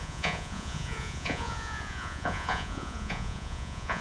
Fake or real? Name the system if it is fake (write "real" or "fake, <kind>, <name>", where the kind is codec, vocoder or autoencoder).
fake, vocoder, Vocos